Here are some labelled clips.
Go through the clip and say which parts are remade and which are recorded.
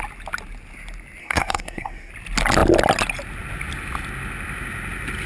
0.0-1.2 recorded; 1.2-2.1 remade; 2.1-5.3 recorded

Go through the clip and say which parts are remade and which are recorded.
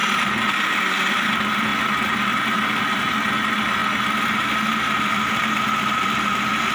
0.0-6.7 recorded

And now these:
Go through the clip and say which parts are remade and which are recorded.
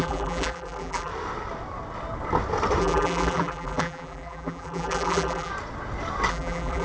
0.0-1.1 remade; 1.1-2.8 recorded; 2.8-5.5 remade; 5.5-6.3 recorded; 6.3-6.8 remade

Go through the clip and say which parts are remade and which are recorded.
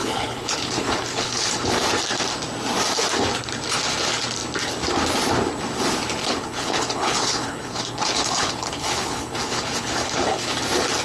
0.0-1.8 remade; 1.8-6.2 recorded; 6.2-10.5 remade; 10.5-11.0 recorded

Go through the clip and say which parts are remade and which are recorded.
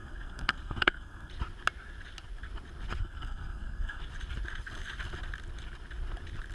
0.0-1.3 remade; 1.3-3.0 recorded; 3.0-4.0 remade; 4.0-6.5 recorded